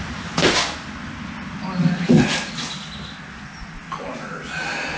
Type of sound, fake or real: real